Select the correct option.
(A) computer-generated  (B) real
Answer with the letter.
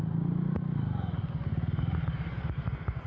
B